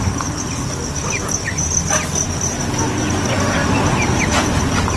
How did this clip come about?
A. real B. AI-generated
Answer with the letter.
A